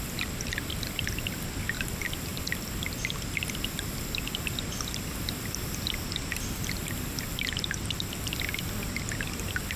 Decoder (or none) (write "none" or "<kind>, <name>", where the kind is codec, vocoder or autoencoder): vocoder, BigVGAN v2